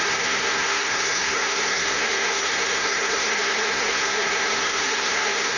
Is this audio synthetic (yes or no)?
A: yes